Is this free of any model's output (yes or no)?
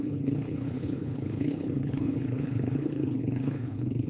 no